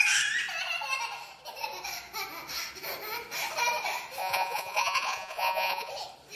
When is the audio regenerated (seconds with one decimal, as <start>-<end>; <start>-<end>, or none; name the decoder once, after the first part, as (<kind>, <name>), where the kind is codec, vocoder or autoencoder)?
4.2-5.9 (vocoder, Vocos)

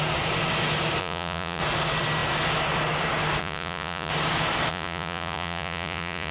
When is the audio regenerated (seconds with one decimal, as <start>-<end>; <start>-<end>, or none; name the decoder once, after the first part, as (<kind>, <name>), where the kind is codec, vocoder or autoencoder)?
1.0-1.6 (vocoder, Vocos); 3.4-4.1; 4.7-6.3